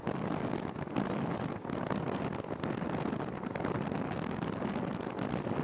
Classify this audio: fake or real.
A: real